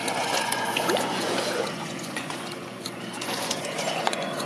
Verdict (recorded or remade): remade